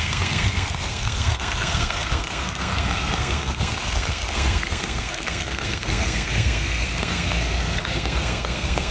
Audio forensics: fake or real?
fake